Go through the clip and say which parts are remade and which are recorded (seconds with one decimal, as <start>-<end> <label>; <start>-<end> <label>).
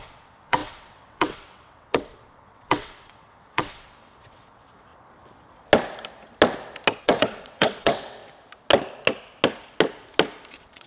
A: 0.0-4.9 remade; 4.9-7.0 recorded; 7.0-8.2 remade; 8.2-10.5 recorded; 10.5-10.9 remade